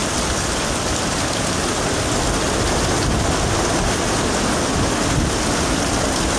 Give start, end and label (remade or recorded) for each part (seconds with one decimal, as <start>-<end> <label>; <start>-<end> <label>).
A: 0.0-6.4 recorded